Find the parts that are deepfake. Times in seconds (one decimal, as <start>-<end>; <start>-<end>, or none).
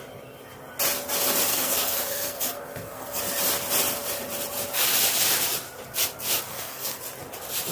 1.5-3.2; 6.5-7.0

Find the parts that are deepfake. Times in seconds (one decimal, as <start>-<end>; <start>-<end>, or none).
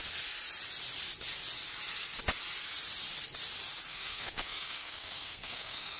3.9-6.0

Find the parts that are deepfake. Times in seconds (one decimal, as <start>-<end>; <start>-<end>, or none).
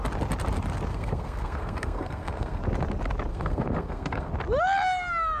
0.9-2.6; 3.3-4.3